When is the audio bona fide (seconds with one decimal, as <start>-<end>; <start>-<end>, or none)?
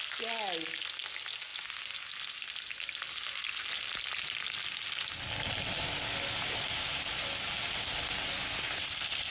0.0-9.3